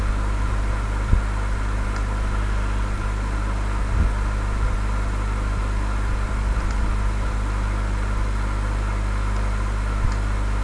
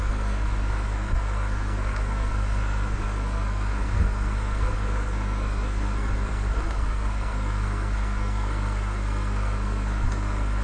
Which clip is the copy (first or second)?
second